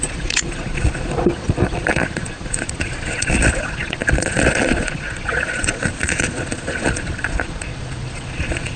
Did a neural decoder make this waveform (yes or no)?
yes